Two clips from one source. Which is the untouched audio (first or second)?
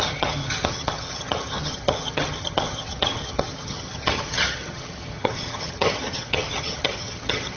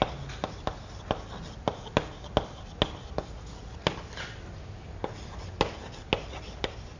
second